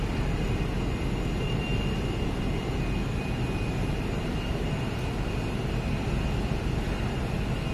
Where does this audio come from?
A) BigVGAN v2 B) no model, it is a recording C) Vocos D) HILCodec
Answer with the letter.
B